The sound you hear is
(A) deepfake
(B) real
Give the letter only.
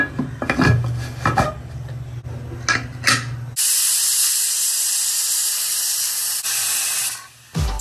B